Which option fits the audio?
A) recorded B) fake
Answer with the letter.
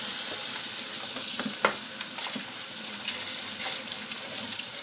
B